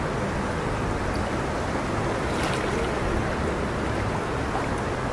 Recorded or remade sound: recorded